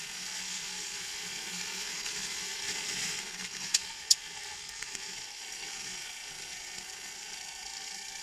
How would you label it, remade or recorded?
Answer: remade